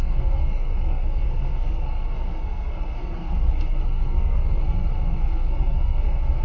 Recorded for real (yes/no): no